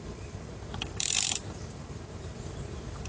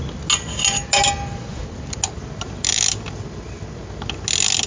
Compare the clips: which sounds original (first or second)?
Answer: second